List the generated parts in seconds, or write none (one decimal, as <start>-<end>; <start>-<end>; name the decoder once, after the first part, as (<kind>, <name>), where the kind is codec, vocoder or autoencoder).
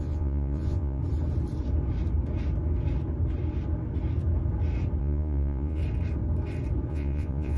0.0-1.0 (vocoder, Vocos); 5.0-5.8; 6.9-7.6